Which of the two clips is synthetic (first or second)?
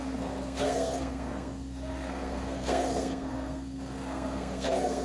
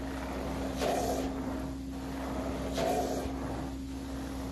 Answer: first